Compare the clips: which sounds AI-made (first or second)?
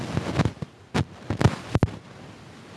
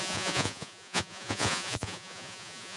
second